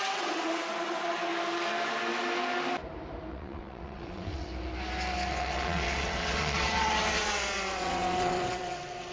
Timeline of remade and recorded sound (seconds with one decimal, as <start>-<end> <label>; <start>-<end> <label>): 0.0-1.3 remade; 1.3-3.3 recorded; 3.3-4.5 remade; 4.5-5.3 recorded; 5.3-9.1 remade

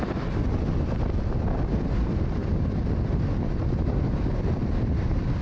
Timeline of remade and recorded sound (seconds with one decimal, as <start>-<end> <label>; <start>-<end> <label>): 0.0-5.4 recorded

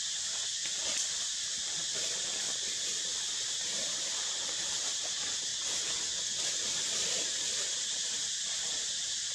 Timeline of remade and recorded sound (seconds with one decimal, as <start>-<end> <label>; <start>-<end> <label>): 0.0-0.6 remade; 0.6-3.5 recorded; 3.5-5.5 remade; 5.5-7.4 recorded; 7.4-9.3 remade

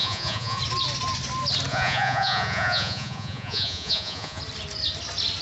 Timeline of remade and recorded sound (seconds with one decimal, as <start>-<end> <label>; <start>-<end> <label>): 0.0-0.6 remade; 0.6-1.7 recorded; 1.7-4.4 remade; 4.4-5.4 recorded

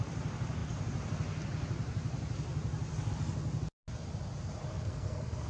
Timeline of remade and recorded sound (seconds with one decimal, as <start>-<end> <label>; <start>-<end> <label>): 0.0-4.7 recorded; 4.7-5.5 remade

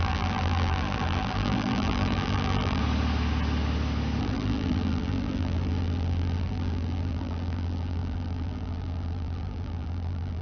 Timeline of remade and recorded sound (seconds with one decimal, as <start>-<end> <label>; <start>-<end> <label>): 0.0-2.8 remade; 2.8-4.2 recorded; 4.2-10.4 remade

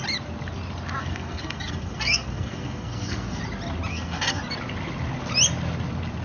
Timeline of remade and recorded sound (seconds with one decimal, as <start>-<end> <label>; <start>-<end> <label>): 0.0-1.0 recorded; 1.0-3.4 remade; 3.4-3.9 recorded; 3.9-4.4 remade; 4.4-6.2 recorded